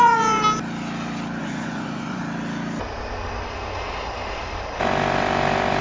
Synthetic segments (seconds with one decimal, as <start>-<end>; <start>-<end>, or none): 0.0-0.4; 1.4-2.2